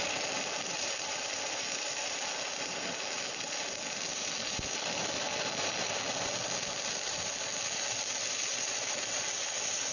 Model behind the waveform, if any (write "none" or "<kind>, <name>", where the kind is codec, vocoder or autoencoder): none